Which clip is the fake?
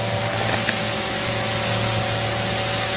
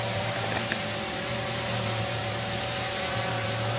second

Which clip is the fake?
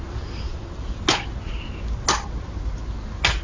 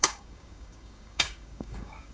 second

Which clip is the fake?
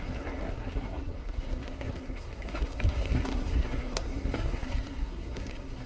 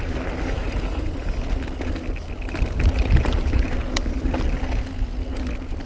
first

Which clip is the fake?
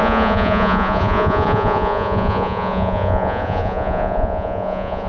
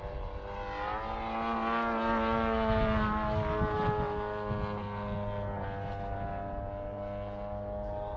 first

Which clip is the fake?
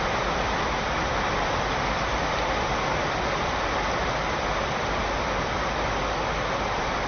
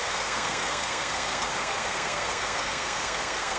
second